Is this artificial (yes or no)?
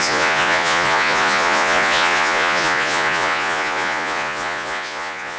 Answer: yes